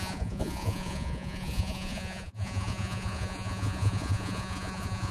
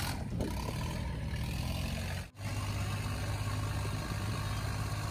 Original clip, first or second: second